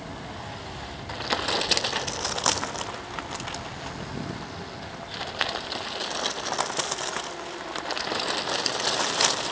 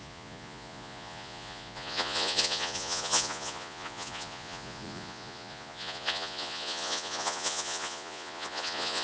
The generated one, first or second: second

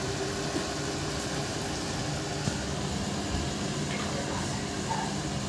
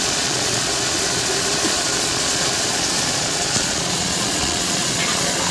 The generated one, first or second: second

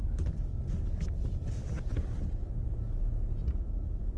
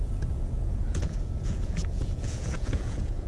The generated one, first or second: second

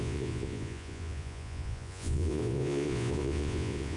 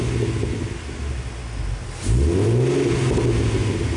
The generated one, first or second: first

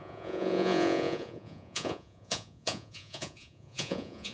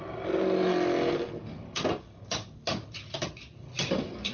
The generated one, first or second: first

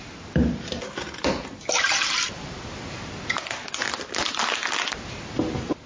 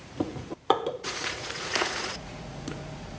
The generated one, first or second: second